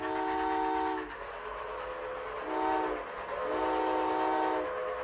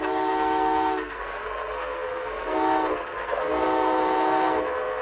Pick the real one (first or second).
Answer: first